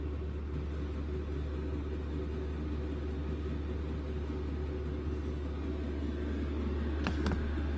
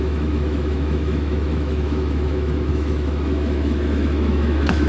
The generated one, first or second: second